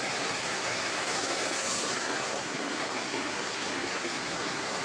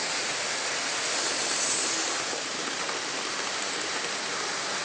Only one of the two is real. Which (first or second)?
second